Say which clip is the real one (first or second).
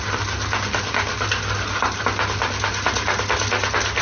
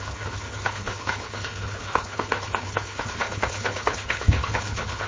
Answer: first